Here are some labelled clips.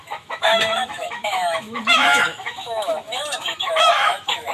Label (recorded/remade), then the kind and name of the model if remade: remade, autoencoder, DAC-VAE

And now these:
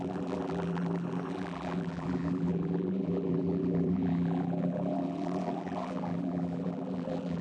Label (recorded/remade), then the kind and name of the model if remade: remade, vocoder, BigVGAN v2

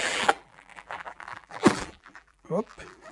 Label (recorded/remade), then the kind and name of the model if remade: remade, vocoder, BigVGAN v2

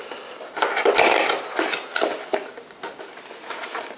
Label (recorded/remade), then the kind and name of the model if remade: recorded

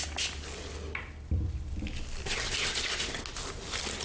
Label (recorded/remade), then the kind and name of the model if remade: recorded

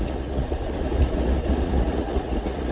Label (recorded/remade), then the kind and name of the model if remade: remade, vocoder, Vocos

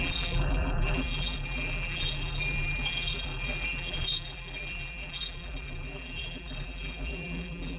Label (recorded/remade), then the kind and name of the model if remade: remade, vocoder, BigVGAN v2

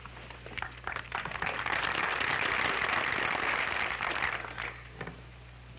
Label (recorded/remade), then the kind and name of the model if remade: recorded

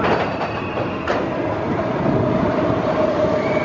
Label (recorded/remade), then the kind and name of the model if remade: recorded